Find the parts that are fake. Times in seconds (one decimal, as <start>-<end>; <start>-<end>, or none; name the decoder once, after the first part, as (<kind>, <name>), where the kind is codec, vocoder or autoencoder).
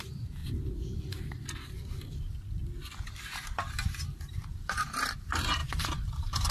0.0-0.4 (vocoder, BigVGAN v2); 3.2-6.5